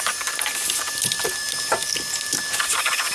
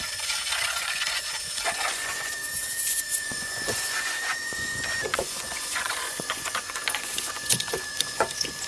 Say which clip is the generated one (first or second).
second